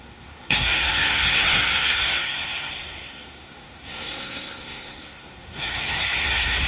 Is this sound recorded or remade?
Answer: remade